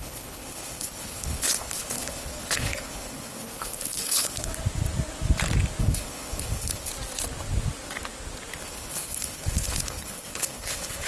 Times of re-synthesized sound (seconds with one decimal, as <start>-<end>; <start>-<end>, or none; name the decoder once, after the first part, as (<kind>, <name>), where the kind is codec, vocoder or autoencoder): 0.0-4.5 (codec, HILCodec); 5.8-6.9; 8.6-11.1